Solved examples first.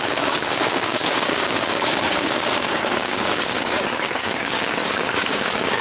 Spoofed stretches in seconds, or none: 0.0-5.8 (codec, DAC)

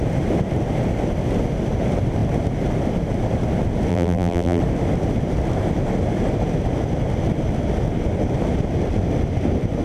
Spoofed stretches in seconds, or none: 3.9-4.6 (vocoder, BigVGAN v2)

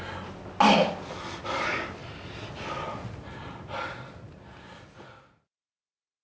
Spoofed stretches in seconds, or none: none

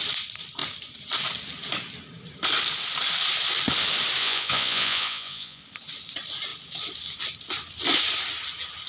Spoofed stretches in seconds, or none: 4.2-5.6 (vocoder, Vocos)

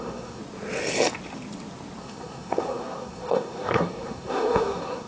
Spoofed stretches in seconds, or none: 0.0-0.4 (codec, SNAC); 2.0-5.1